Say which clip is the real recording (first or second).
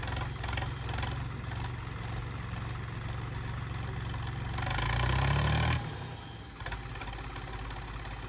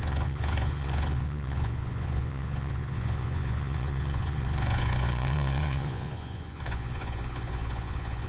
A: first